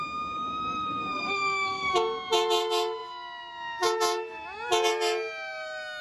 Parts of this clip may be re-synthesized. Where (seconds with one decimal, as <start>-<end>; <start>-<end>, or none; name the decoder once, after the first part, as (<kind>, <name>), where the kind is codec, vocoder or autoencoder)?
0.6-1.9 (codec, SNAC)

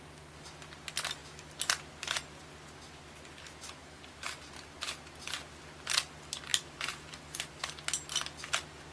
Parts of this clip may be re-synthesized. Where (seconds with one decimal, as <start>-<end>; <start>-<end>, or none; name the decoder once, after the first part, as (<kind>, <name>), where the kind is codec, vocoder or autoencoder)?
3.8-4.5 (vocoder, BigVGAN v2); 6.5-7.7

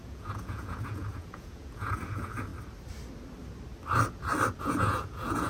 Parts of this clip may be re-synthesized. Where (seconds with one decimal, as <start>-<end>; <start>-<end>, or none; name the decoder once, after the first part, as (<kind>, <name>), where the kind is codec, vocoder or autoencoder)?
0.0-2.5 (vocoder, Vocos); 4.6-5.5

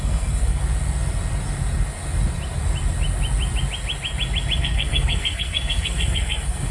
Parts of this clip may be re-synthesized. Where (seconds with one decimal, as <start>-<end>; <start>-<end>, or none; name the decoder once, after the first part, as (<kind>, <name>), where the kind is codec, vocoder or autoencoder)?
0.0-0.6 (codec, SNAC); 4.6-6.7